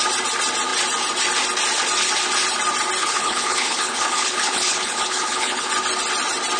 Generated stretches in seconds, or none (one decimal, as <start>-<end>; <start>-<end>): 3.0-5.7